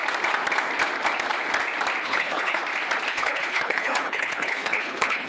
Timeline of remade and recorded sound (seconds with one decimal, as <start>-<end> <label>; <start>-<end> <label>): 0.0-2.0 recorded; 2.0-2.6 remade; 2.6-3.1 recorded; 3.1-5.3 remade